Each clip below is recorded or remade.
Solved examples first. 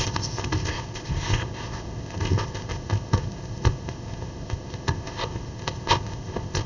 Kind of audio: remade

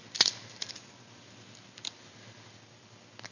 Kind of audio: recorded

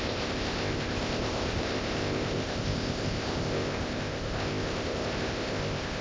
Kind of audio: remade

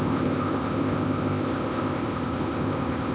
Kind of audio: remade